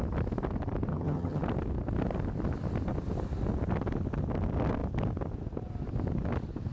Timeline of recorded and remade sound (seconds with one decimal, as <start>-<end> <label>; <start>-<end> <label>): 0.0-0.9 recorded; 0.9-1.4 remade; 1.4-6.7 recorded